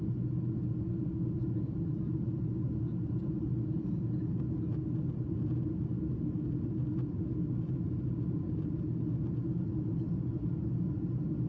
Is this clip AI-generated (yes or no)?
no